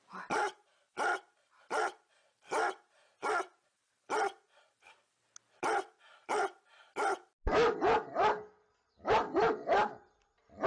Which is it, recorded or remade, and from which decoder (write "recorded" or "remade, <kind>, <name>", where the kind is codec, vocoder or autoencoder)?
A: recorded